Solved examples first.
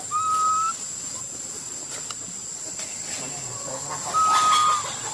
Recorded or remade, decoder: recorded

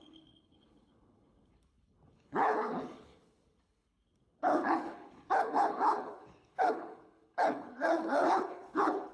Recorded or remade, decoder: remade, codec, HILCodec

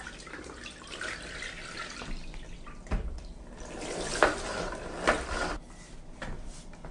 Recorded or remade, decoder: recorded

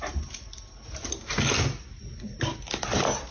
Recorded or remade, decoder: recorded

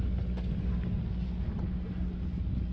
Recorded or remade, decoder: recorded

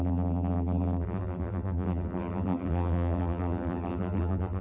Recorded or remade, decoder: remade, vocoder, BigVGAN v2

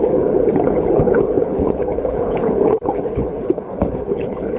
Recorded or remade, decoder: remade, codec, HILCodec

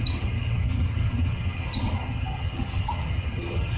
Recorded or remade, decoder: remade, vocoder, HiFi-GAN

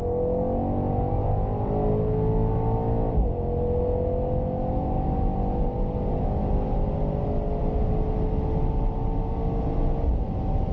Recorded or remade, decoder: recorded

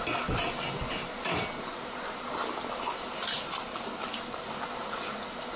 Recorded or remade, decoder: recorded